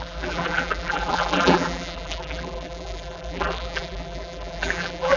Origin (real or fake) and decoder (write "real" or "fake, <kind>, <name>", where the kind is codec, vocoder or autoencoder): fake, vocoder, BigVGAN v2